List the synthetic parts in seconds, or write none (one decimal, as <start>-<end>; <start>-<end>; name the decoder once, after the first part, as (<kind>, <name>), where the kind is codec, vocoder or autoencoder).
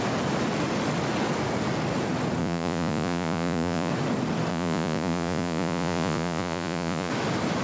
2.4-3.9 (vocoder, Vocos); 4.5-7.1